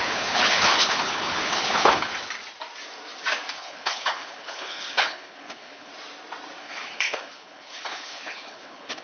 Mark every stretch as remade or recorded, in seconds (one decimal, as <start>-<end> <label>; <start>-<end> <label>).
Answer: 0.0-2.1 remade; 2.1-3.5 recorded; 3.5-5.9 remade; 5.9-6.6 recorded; 6.6-9.0 remade